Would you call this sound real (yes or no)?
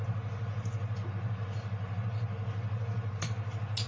yes